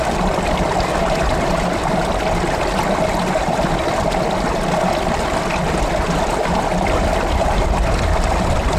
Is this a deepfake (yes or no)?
no